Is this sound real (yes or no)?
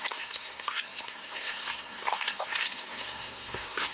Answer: no